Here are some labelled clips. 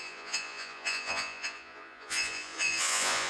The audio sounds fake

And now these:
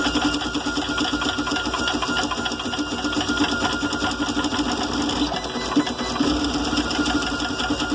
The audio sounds real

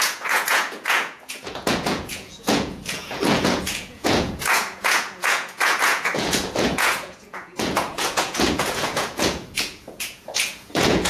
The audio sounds fake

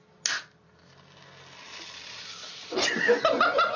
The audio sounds real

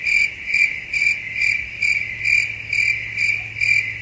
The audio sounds real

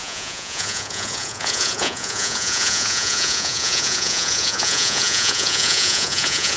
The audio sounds fake